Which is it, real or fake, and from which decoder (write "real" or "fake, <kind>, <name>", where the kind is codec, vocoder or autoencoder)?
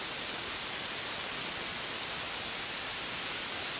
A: real